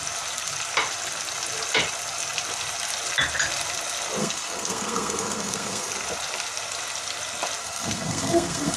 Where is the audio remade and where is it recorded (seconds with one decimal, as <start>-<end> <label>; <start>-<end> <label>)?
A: 0.0-4.2 recorded; 4.2-5.9 remade; 5.9-7.6 recorded; 7.6-8.8 remade